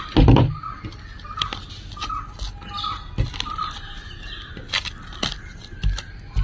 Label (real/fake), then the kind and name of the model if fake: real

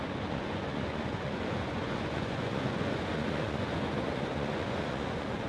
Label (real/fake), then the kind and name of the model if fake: fake, vocoder, Vocos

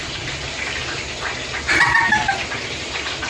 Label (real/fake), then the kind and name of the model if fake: real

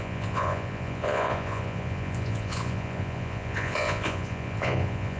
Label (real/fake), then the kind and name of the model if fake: fake, vocoder, Vocos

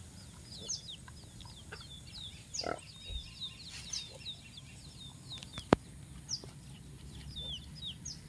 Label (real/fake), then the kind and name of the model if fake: real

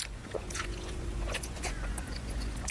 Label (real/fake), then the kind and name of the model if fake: fake, vocoder, Vocos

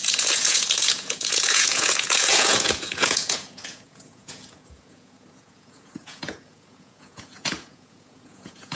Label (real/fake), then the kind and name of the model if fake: fake, vocoder, Vocos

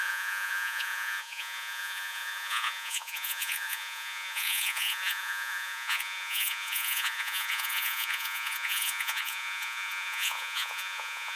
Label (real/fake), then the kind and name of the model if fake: fake, vocoder, Vocos